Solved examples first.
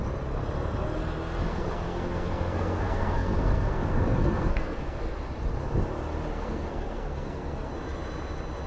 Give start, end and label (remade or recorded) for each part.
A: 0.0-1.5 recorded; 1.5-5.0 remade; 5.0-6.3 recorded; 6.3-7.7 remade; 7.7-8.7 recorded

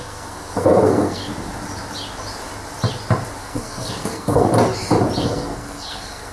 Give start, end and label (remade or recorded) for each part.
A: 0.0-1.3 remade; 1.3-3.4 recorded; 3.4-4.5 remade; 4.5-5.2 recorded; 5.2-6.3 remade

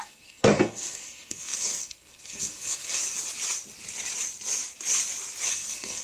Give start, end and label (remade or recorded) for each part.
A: 0.0-3.0 remade; 3.0-5.5 recorded; 5.5-6.0 remade